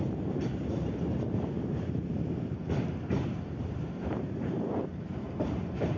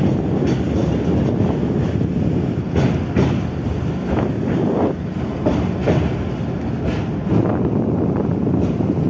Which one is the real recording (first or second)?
second